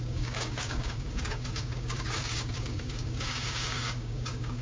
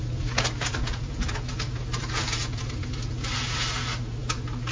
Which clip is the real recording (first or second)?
second